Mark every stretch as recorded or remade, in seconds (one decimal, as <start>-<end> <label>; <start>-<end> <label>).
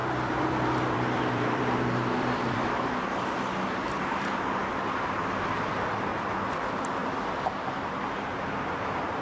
0.0-3.3 remade; 3.3-4.7 recorded; 4.7-5.3 remade; 5.3-9.2 recorded